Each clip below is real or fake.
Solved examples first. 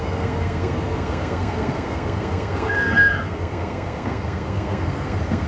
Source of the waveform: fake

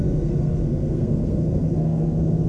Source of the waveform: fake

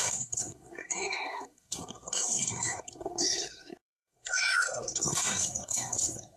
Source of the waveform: fake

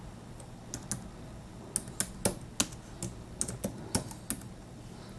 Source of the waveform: real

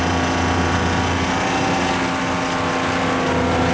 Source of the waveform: real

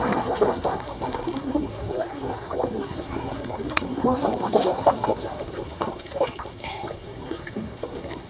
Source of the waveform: fake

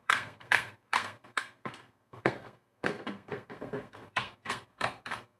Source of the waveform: fake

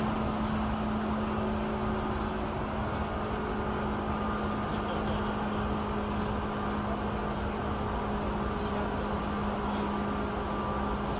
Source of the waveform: real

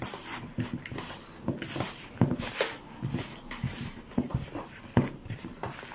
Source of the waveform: real